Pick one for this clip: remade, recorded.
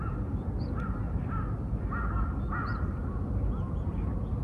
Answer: recorded